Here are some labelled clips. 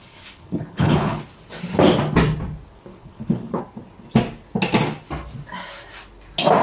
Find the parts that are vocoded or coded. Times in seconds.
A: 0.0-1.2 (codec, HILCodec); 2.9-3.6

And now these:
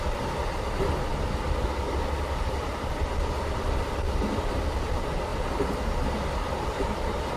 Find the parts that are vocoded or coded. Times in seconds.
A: none